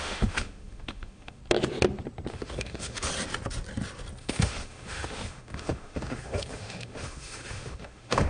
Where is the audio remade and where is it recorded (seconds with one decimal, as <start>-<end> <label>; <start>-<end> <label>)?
0.0-1.4 remade; 1.4-2.3 recorded; 2.3-3.1 remade; 3.1-4.2 recorded; 4.2-8.3 remade